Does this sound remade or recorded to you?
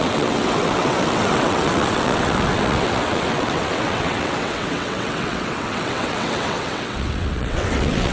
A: remade